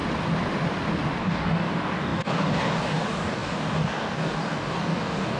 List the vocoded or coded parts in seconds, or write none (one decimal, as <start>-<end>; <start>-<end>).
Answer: 1.2-5.4